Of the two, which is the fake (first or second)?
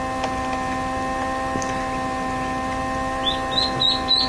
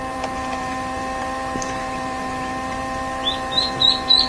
second